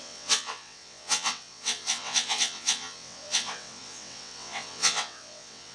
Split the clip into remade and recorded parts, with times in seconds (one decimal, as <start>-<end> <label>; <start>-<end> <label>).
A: 0.0-5.7 remade